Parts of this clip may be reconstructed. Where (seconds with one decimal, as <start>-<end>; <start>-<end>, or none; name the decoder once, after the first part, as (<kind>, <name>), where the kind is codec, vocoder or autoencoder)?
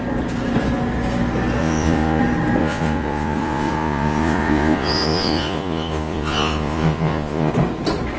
1.6-2.2 (vocoder, Vocos); 2.6-7.5